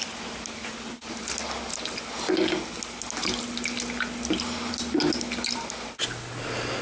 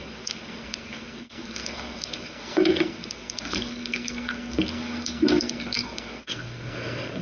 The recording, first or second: first